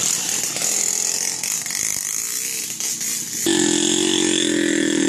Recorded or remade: recorded